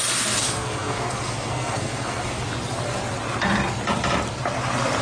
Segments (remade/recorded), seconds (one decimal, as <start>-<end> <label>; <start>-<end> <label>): 0.0-0.4 recorded; 0.4-2.4 remade; 2.4-5.0 recorded